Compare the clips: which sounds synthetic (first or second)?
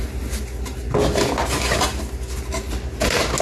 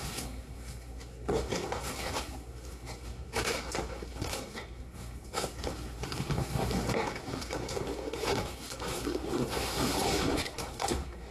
second